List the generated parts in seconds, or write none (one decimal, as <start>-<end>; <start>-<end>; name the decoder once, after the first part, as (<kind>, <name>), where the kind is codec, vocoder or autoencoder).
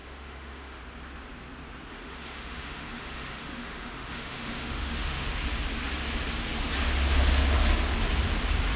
0.0-0.8 (autoencoder, DAC-VAE); 1.9-5.4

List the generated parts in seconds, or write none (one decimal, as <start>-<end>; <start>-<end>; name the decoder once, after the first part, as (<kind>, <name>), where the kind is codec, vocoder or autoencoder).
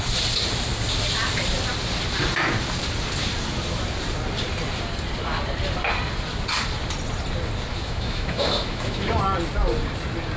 7.7-9.2 (autoencoder, DAC-VAE)